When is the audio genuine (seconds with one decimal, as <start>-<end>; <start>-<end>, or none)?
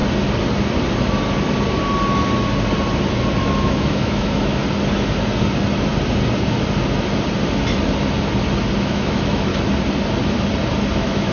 0.0-3.4; 4.6-8.8; 9.5-10.9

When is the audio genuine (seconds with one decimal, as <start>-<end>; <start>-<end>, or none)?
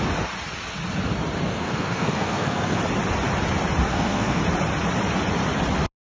0.0-1.5; 2.8-3.9; 4.4-6.1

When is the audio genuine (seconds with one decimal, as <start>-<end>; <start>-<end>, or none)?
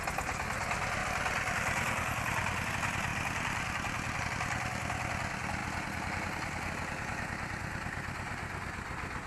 0.0-9.3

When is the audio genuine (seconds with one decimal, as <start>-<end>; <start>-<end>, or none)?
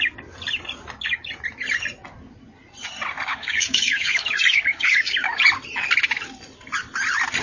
0.0-3.3; 5.4-7.4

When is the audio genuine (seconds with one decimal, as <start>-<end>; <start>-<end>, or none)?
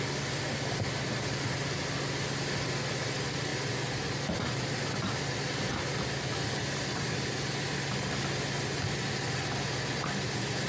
0.0-3.5; 4.2-10.7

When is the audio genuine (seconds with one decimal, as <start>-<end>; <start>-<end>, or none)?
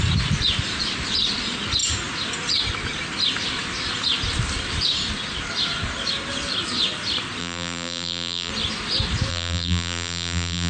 0.0-7.4; 8.5-9.3